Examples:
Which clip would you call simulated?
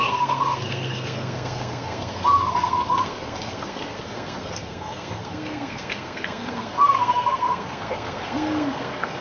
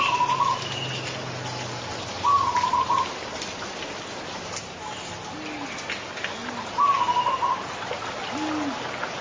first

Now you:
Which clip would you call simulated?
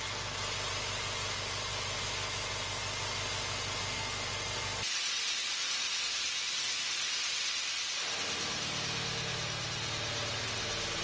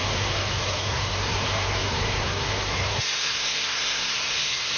second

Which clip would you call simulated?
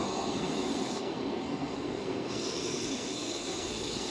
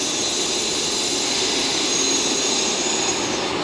first